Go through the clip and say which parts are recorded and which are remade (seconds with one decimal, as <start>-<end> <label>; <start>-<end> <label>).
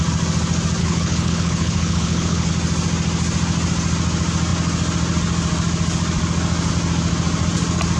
0.0-0.8 recorded; 0.8-2.5 remade; 2.5-8.0 recorded